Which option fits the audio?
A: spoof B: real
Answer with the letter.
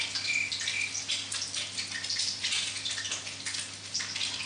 B